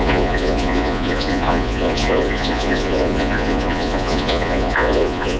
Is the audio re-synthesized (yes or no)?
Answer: yes